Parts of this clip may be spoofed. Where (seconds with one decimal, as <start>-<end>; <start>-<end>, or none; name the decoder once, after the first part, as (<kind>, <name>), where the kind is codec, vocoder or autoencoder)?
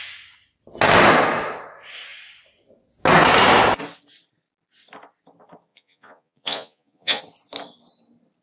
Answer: 5.7-7.2 (vocoder, Vocos)